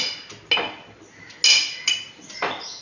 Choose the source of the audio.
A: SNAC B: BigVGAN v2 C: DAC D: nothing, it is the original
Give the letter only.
D